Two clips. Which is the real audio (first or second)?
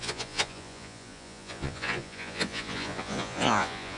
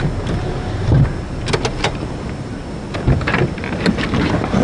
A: second